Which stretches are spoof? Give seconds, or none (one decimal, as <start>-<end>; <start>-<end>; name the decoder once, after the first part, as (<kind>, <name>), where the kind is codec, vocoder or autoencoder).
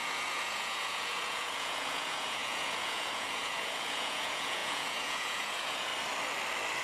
0.0-5.9 (vocoder, Vocos)